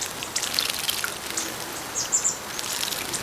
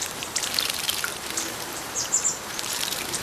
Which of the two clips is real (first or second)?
first